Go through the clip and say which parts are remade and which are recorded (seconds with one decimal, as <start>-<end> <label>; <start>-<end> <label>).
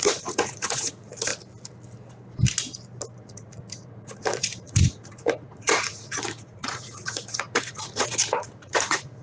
0.0-1.3 remade; 1.3-3.2 recorded; 3.2-9.2 remade